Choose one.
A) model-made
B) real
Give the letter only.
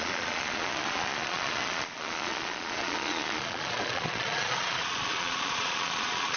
A